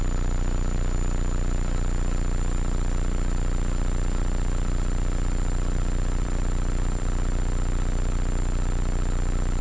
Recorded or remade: remade